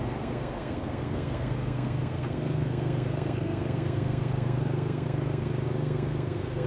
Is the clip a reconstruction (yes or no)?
yes